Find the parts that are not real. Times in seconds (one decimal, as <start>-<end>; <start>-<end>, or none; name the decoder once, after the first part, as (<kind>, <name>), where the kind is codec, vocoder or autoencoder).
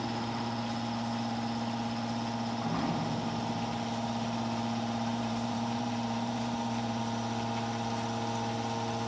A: 5.1-7.0 (vocoder, BigVGAN v2)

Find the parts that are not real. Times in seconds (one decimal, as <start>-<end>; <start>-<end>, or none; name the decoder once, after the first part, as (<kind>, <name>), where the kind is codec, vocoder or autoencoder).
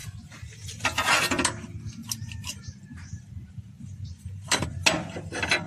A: 2.0-4.8 (vocoder, BigVGAN v2)